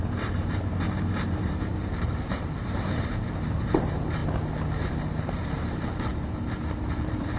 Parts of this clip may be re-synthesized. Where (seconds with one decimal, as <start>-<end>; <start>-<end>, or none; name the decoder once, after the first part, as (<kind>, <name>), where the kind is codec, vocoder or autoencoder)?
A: 0.0-2.6 (vocoder, BigVGAN v2); 3.8-4.2; 4.9-6.1; 6.8-7.4

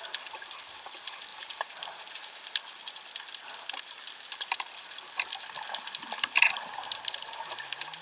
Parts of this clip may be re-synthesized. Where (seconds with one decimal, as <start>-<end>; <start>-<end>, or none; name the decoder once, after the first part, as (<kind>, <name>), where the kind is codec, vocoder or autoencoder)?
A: 1.3-2.6 (vocoder, BigVGAN v2)

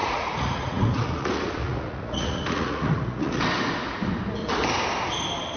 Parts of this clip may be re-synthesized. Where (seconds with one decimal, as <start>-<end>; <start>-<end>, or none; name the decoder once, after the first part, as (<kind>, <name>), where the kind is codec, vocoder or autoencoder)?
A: 0.0-3.4 (vocoder, Vocos)

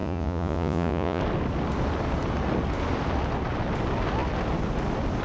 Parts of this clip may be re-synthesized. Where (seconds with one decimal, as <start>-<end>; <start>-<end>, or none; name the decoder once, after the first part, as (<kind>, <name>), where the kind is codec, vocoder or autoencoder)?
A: 0.0-1.2 (vocoder, Vocos)